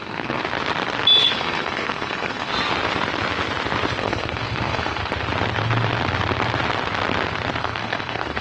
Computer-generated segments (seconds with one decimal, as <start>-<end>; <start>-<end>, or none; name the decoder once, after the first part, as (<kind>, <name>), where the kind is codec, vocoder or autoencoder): 0.0-0.4 (codec, SNAC); 1.2-2.5; 4.0-5.0; 7.6-8.4